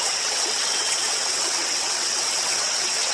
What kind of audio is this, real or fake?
fake